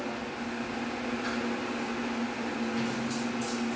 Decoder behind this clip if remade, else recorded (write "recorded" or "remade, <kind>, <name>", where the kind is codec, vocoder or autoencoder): recorded